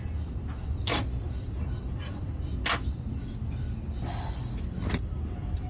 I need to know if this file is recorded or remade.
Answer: recorded